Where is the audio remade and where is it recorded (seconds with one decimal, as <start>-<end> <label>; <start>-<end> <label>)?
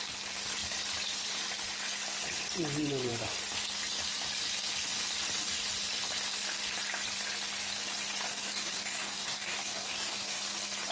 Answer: 0.0-8.3 recorded; 8.3-10.4 remade; 10.4-10.9 recorded